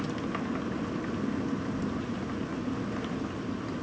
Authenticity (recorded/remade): recorded